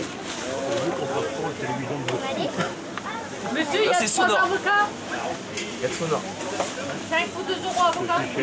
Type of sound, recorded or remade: recorded